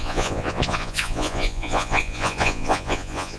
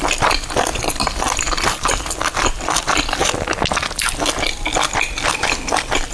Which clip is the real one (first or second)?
second